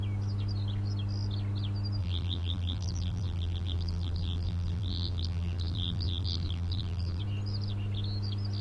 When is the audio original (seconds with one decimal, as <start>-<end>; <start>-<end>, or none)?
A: 0.0-2.0; 7.2-8.6